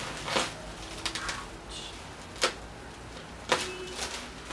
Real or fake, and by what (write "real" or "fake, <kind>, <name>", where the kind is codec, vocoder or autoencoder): real